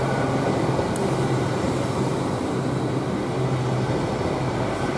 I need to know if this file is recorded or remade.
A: recorded